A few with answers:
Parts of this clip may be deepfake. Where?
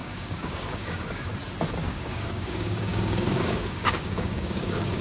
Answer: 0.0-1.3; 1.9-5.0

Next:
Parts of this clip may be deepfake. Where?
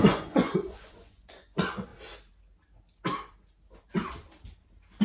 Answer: 0.0-1.9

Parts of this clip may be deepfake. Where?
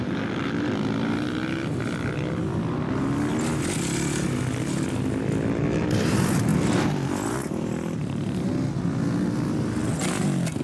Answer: none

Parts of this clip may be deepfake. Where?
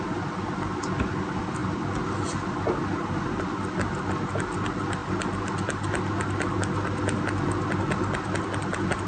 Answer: none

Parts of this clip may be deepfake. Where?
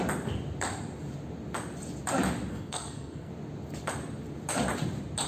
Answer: 2.5-3.3